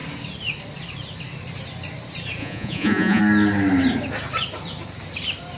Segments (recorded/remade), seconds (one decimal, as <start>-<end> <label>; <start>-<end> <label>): 0.0-2.4 recorded; 2.4-3.2 remade; 3.2-5.6 recorded